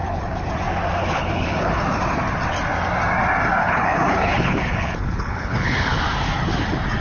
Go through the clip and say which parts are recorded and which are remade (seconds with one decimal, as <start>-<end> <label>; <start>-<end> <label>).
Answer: 0.0-1.0 recorded; 1.0-1.8 remade; 1.8-3.6 recorded; 3.6-6.0 remade; 6.0-7.0 recorded